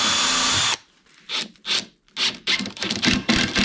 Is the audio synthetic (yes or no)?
no